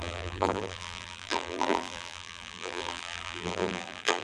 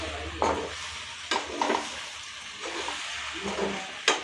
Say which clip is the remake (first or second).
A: first